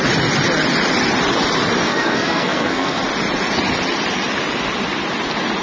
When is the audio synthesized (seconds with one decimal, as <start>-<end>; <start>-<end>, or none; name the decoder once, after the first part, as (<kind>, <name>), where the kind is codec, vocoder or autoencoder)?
1.9-3.0 (codec, SNAC)